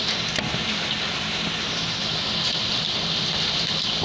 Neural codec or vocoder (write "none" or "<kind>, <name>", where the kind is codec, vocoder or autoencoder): none